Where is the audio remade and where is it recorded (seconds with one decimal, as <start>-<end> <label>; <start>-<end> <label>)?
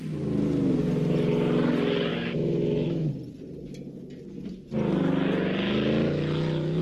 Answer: 0.0-2.1 recorded; 2.1-3.1 remade; 3.1-6.8 recorded